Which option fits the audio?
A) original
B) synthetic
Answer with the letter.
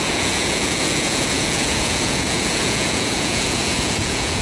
B